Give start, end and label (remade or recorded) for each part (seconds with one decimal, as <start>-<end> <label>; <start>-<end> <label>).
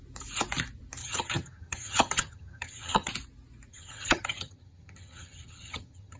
0.0-1.0 recorded; 1.0-3.1 remade; 3.1-3.7 recorded; 3.7-6.2 remade